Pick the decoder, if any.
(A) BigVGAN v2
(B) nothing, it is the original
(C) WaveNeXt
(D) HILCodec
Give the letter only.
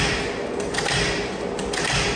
B